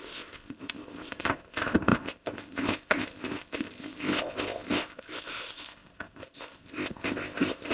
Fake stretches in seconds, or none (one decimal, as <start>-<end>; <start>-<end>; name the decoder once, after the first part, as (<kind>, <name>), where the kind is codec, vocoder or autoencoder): 0.0-7.7 (codec, ZipCodec)